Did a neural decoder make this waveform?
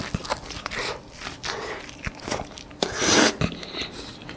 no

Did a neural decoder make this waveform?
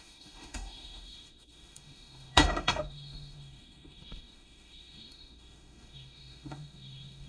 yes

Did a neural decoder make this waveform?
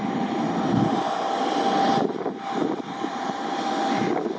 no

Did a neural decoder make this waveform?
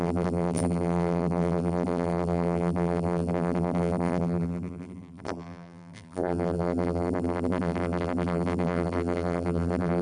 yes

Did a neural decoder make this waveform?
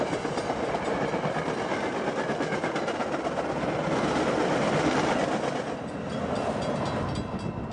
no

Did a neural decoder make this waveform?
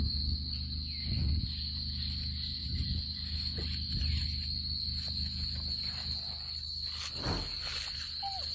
no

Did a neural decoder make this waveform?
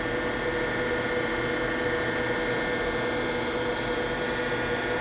no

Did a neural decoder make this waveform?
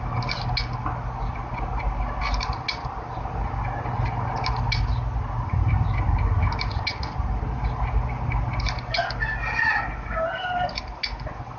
no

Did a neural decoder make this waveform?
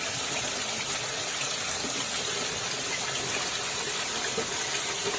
no